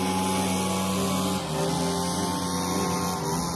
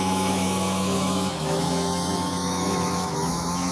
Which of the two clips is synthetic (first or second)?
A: second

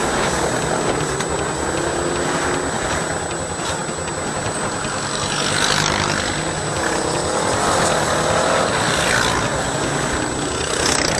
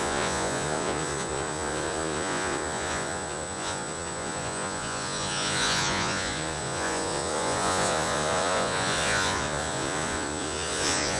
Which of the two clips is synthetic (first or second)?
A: second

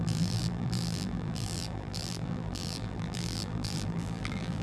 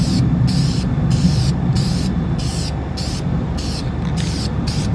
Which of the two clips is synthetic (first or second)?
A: first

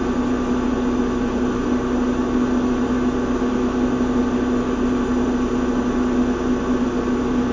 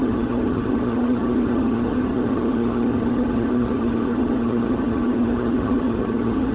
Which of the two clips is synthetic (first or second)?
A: second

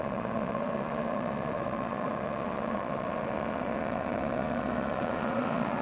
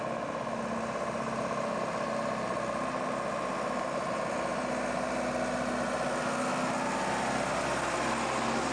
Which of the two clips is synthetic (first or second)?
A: first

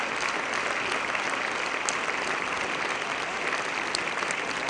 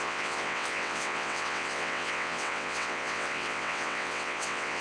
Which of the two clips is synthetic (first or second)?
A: second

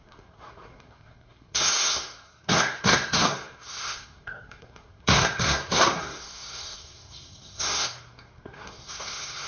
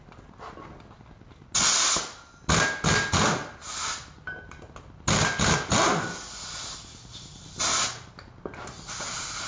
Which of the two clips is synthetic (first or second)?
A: first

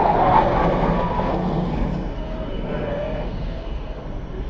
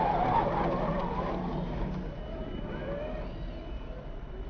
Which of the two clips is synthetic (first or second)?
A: first